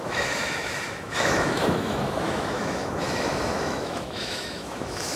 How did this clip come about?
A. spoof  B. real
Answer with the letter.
A